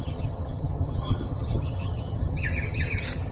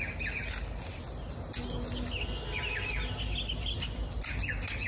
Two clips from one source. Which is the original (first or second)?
second